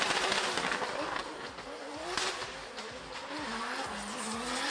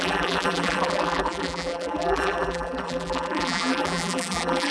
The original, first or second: first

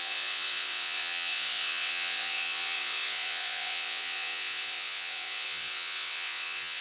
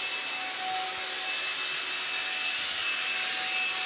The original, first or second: second